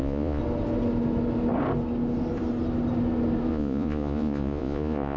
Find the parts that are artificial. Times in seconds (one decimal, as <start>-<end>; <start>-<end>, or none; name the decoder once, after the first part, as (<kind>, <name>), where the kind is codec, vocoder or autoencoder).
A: 0.0-0.4 (vocoder, Vocos); 3.5-5.2